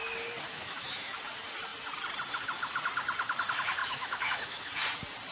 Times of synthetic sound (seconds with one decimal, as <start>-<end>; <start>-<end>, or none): 0.5-1.1; 3.8-4.7